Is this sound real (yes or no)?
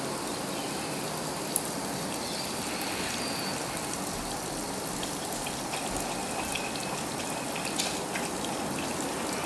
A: yes